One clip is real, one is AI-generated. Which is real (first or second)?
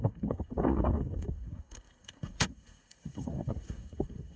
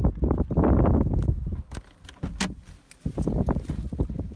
second